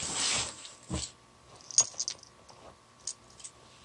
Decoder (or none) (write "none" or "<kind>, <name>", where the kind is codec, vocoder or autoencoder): none